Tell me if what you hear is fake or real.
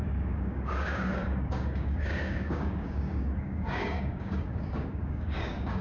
fake